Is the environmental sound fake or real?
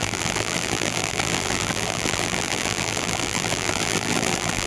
fake